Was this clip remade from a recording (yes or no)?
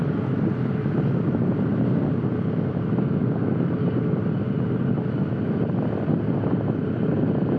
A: no